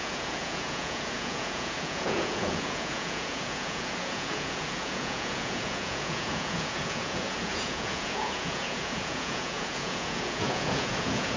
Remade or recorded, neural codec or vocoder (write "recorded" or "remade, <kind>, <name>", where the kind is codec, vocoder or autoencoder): remade, vocoder, Vocos